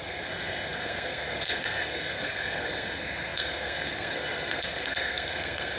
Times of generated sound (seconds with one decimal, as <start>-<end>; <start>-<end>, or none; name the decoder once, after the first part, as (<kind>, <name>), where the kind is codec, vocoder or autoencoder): 0.0-5.8 (codec, SNAC)

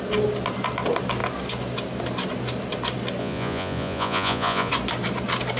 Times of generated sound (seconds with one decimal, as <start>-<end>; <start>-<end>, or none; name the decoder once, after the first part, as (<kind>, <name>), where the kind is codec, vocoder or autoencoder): 3.2-4.7 (vocoder, Vocos)

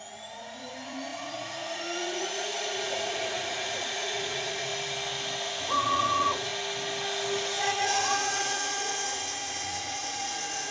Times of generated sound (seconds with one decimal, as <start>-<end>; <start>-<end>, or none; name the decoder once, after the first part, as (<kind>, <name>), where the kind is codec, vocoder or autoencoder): 0.0-4.7 (vocoder, Vocos); 5.6-6.5; 7.6-10.7

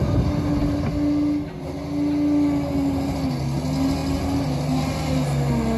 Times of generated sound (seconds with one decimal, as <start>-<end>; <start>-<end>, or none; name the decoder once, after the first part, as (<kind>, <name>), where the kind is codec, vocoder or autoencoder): none

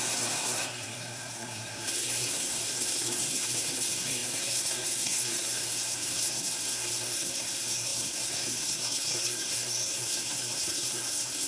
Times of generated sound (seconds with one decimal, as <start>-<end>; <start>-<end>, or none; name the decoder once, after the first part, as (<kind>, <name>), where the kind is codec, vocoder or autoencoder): 0.0-11.5 (codec, SNAC)